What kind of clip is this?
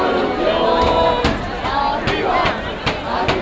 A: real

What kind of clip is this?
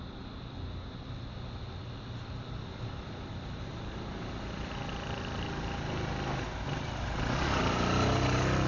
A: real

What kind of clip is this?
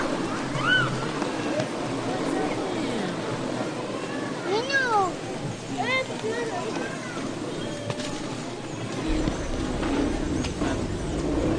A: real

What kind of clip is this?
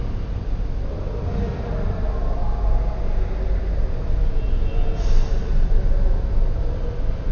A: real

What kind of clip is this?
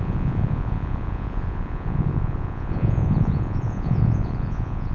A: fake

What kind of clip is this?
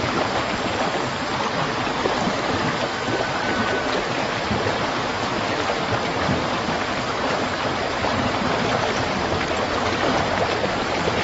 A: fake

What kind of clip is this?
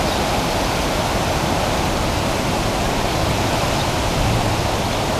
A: real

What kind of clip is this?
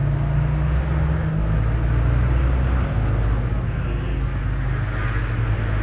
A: real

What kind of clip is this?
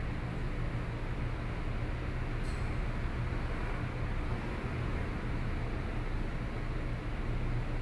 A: real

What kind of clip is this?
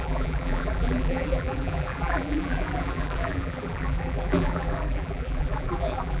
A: fake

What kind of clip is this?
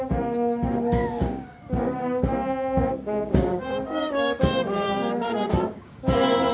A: fake